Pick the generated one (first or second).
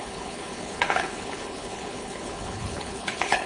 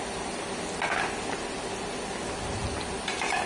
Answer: first